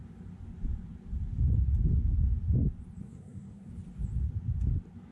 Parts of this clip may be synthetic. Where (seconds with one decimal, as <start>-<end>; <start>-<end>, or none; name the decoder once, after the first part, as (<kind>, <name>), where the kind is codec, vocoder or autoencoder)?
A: 3.0-3.7 (codec, SNAC)